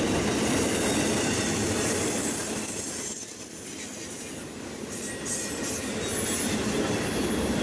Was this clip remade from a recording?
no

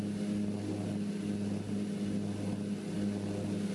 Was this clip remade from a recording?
no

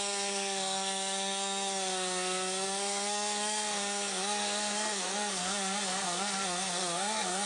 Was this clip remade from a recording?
yes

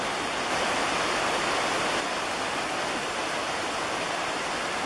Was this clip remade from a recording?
no